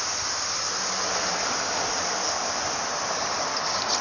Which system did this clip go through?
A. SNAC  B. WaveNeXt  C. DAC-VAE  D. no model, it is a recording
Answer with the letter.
D